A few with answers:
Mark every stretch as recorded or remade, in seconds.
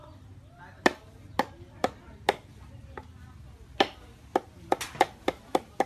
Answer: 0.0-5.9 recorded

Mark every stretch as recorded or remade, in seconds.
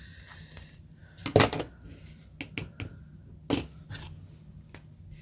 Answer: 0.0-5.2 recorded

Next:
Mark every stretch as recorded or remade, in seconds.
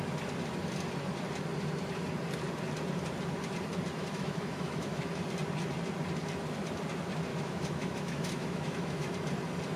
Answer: 0.0-4.0 recorded; 4.0-5.0 remade; 5.0-7.3 recorded; 7.3-9.1 remade; 9.1-9.8 recorded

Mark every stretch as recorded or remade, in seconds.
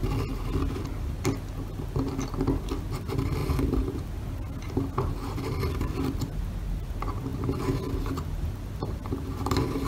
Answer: 0.0-9.9 recorded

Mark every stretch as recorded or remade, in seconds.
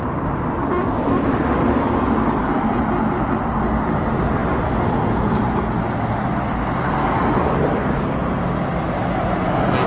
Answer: 0.0-9.9 recorded